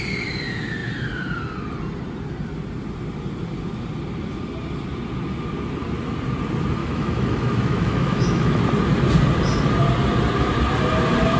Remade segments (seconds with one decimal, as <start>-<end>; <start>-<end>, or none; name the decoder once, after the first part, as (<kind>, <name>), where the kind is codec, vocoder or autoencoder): 6.8-8.6 (autoencoder, DAC-VAE)